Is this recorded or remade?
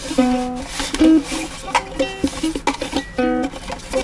recorded